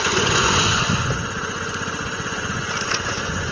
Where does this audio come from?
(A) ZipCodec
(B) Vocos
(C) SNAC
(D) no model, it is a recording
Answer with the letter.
B